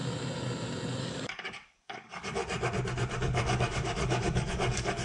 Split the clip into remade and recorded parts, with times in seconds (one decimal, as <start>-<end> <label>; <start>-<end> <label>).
0.0-1.0 recorded; 1.0-2.4 remade; 2.4-3.1 recorded; 3.1-5.0 remade